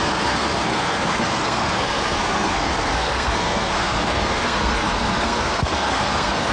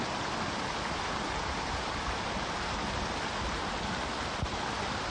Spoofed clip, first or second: first